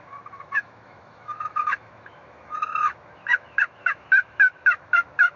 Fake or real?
fake